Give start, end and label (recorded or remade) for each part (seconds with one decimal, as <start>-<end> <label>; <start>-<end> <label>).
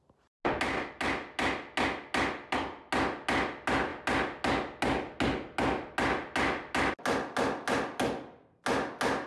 0.0-9.3 recorded